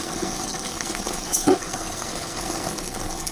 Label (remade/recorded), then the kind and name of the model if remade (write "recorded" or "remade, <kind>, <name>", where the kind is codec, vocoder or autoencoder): remade, codec, SNAC